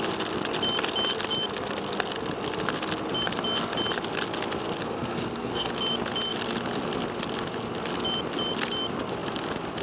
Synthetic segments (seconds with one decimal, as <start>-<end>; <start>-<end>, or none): 4.8-5.7